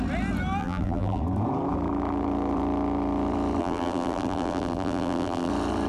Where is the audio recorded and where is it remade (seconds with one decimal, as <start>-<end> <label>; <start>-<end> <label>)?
0.0-0.6 recorded; 0.6-1.2 remade; 1.2-3.6 recorded; 3.6-5.5 remade; 5.5-5.9 recorded